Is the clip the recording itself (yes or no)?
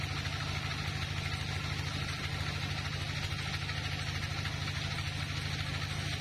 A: yes